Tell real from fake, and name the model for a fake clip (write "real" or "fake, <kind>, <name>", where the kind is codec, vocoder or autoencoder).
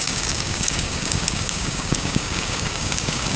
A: fake, codec, DAC